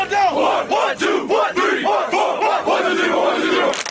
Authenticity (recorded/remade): recorded